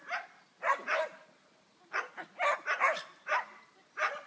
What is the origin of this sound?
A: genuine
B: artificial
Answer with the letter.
A